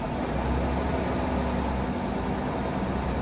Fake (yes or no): no